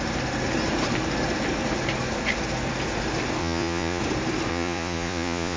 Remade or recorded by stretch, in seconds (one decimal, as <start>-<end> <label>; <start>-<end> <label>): 0.0-3.4 recorded; 3.4-4.0 remade; 4.0-4.5 recorded; 4.5-5.6 remade